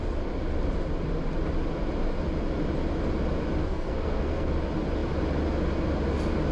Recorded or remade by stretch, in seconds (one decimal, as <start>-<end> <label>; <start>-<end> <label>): 0.0-3.6 recorded; 3.6-4.5 remade; 4.5-6.5 recorded

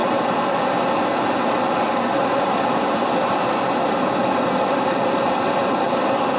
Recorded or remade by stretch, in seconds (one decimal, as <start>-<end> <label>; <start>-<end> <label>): 0.0-6.4 recorded

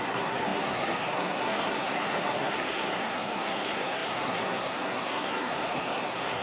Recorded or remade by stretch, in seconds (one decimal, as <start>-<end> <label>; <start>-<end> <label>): 0.0-6.4 remade

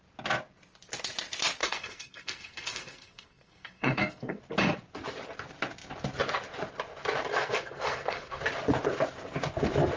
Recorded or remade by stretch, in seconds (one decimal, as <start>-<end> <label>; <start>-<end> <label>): 0.0-1.6 recorded; 1.6-4.4 remade; 4.4-7.3 recorded; 7.3-8.4 remade; 8.4-10.0 recorded

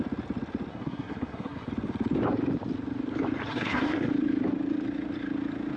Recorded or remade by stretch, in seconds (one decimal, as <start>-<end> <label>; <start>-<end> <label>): 0.0-0.7 recorded; 0.7-1.7 remade; 1.7-3.5 recorded; 3.5-4.1 remade; 4.1-5.8 recorded

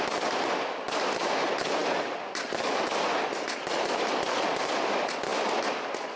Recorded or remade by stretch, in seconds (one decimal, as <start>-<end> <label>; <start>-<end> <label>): 0.0-6.2 recorded